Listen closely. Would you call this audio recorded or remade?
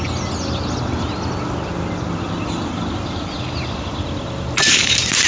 recorded